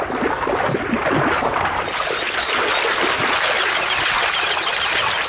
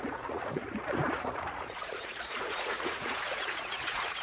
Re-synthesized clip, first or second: second